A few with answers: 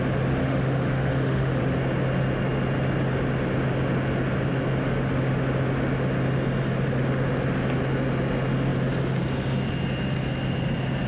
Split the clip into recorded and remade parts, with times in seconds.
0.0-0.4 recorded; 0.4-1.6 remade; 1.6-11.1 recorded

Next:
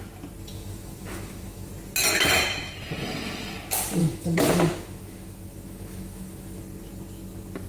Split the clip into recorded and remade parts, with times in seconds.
0.0-0.5 recorded; 0.5-1.7 remade; 1.7-4.0 recorded; 4.0-6.6 remade; 6.6-7.7 recorded

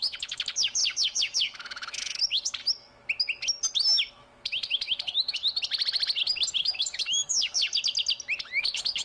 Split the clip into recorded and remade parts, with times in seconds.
0.0-2.6 remade; 2.6-4.1 recorded; 4.1-5.4 remade; 5.4-6.5 recorded; 6.5-7.6 remade; 7.6-8.6 recorded; 8.6-9.0 remade

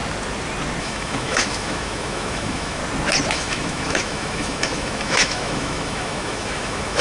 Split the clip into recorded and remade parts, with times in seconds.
0.0-0.8 recorded; 0.8-2.8 remade; 2.8-3.3 recorded; 3.3-7.0 remade

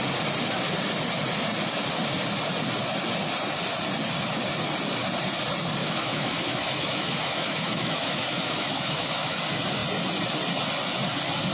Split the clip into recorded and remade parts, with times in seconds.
0.0-5.8 recorded; 5.8-9.4 remade; 9.4-11.5 recorded